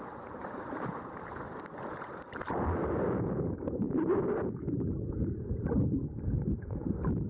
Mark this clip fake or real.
real